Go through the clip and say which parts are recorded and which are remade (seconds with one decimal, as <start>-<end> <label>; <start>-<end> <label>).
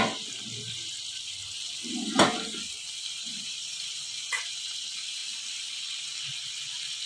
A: 0.0-3.2 recorded; 3.2-4.0 remade; 4.0-7.1 recorded